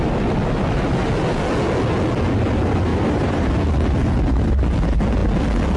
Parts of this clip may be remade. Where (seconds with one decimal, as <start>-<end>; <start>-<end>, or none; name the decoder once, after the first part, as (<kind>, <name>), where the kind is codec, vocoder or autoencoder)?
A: 2.9-3.5 (vocoder, BigVGAN v2)